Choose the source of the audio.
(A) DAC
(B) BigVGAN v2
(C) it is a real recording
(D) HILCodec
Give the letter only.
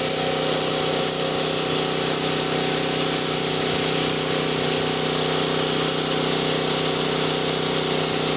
C